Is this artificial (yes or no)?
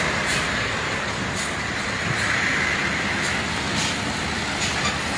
no